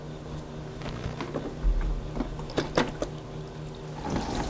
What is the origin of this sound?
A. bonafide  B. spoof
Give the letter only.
A